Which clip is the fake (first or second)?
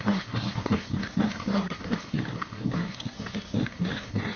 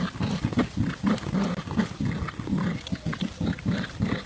first